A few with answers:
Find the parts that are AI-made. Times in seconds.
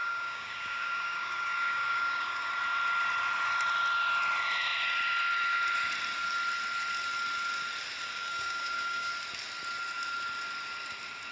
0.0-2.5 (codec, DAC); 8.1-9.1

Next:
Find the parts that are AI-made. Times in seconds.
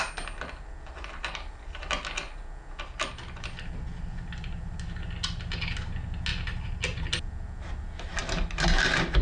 none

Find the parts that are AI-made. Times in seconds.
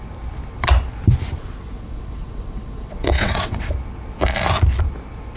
1.6-3.7 (vocoder, WaveNeXt)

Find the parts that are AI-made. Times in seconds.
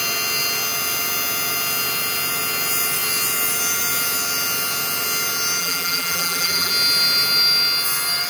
5.6-6.7 (vocoder, BigVGAN v2)